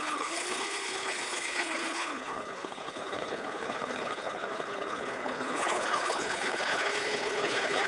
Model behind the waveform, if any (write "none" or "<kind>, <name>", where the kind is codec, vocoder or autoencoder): codec, HILCodec